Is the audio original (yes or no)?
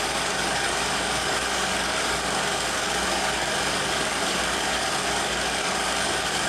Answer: no